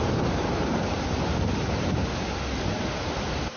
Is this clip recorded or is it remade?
recorded